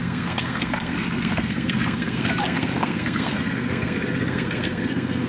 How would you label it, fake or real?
fake